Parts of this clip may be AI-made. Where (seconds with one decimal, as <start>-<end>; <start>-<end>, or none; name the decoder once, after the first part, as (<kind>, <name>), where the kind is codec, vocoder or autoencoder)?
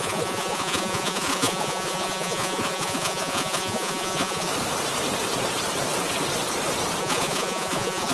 0.0-4.5 (vocoder, Vocos); 7.0-8.1